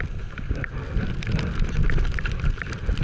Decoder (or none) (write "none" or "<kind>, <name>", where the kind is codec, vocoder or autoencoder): none